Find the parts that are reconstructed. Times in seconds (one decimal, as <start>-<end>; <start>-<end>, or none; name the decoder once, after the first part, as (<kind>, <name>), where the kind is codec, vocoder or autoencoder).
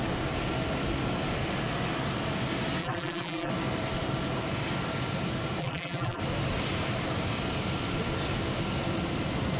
2.8-3.5 (vocoder, BigVGAN v2); 5.6-6.2